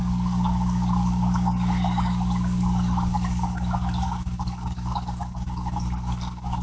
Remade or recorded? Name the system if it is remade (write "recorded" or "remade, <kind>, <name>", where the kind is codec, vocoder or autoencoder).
remade, codec, DAC